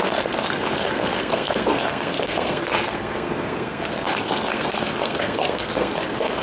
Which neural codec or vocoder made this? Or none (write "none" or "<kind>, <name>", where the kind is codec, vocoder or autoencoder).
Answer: codec, SNAC